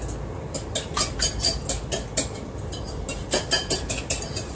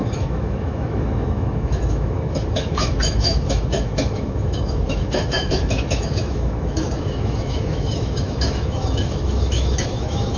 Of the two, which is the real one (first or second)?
first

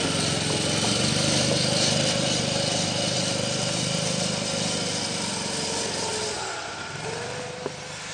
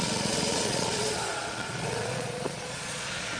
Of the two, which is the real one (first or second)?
first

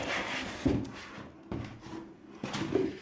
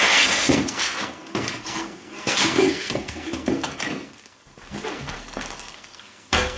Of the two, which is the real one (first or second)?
first